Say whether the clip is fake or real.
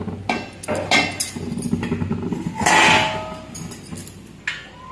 real